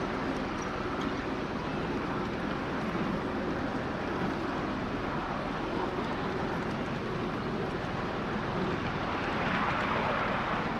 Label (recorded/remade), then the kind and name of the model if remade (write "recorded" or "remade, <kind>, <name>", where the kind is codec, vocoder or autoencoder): recorded